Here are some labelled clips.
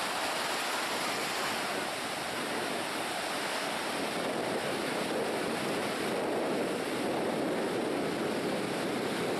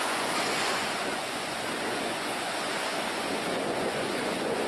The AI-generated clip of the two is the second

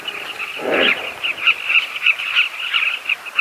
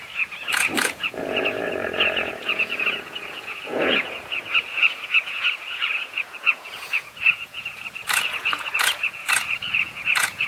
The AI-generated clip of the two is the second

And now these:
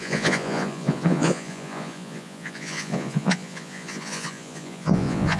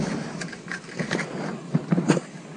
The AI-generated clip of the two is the first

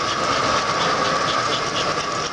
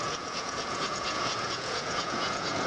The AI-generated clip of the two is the second